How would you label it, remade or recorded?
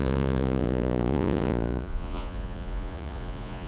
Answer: remade